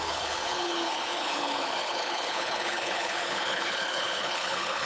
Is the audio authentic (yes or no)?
no